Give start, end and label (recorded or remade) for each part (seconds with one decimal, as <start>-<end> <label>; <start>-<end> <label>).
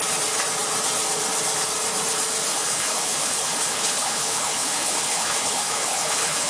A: 0.0-2.5 recorded; 2.5-6.5 remade